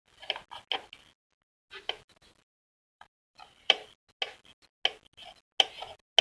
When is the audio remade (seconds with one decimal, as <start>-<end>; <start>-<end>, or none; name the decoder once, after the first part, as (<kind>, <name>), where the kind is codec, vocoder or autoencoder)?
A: 2.9-3.9 (vocoder, BigVGAN v2)